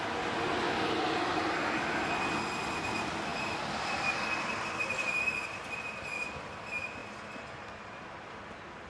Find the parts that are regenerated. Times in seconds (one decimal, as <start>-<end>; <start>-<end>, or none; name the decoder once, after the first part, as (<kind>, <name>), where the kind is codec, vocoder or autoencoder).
none